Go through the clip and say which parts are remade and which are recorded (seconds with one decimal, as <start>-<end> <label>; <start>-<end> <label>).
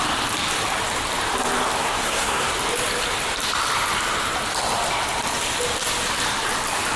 0.0-1.8 recorded; 1.8-2.5 remade; 2.5-7.0 recorded